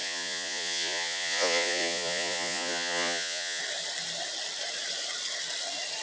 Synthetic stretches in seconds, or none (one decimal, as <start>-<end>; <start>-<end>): 0.0-3.6